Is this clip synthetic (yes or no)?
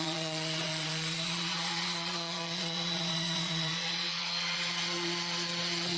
yes